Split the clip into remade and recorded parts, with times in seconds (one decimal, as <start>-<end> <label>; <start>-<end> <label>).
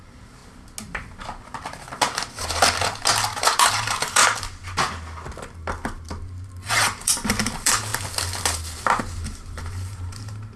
0.0-0.4 remade; 0.4-3.7 recorded; 3.7-4.2 remade; 4.2-6.7 recorded; 6.7-7.9 remade; 7.9-9.0 recorded; 9.0-10.6 remade